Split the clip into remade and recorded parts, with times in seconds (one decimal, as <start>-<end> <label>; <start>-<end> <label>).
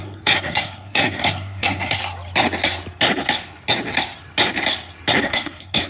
0.0-2.0 remade; 2.0-5.2 recorded; 5.2-5.9 remade